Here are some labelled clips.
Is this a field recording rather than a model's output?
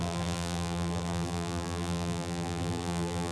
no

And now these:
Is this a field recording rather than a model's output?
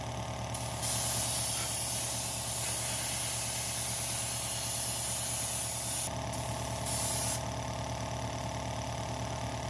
yes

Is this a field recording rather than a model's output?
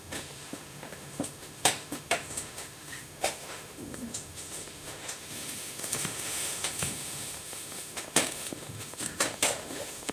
no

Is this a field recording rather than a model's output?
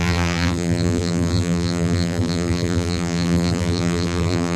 no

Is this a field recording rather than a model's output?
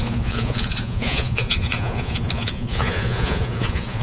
no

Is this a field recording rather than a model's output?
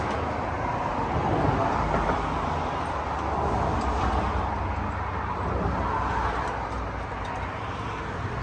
yes